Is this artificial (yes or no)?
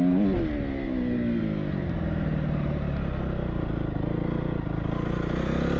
no